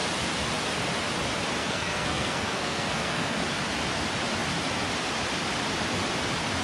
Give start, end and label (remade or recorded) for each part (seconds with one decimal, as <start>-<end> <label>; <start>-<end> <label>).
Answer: 0.0-1.6 recorded; 1.6-3.4 remade; 3.4-6.6 recorded

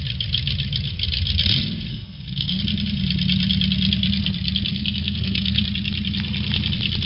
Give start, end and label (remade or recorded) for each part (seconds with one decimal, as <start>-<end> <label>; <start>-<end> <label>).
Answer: 0.0-1.9 recorded; 1.9-2.6 remade; 2.6-4.7 recorded; 4.7-5.6 remade; 5.6-7.1 recorded

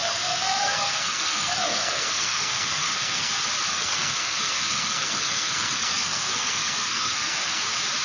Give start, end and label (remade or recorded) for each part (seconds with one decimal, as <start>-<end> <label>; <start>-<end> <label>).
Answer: 0.0-3.3 remade; 3.3-3.7 recorded; 3.7-7.6 remade; 7.6-8.0 recorded

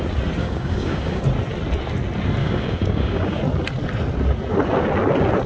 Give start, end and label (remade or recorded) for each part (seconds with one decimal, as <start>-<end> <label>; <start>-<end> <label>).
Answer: 0.0-0.4 recorded; 0.4-1.2 remade; 1.2-2.4 recorded; 2.4-3.4 remade; 3.4-5.5 recorded

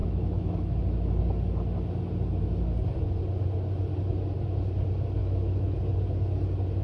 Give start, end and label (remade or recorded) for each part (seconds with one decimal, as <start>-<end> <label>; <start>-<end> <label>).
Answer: 0.0-1.2 remade; 1.2-5.2 recorded; 5.2-5.8 remade; 5.8-6.8 recorded

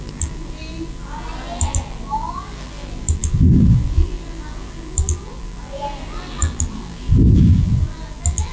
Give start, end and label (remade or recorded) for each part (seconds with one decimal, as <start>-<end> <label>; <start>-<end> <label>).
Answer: 0.0-8.5 remade

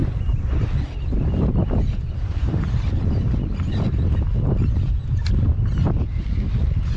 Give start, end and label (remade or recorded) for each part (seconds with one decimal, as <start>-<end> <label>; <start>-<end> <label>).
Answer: 0.0-3.5 remade; 3.5-5.5 recorded; 5.5-6.2 remade; 6.2-7.0 recorded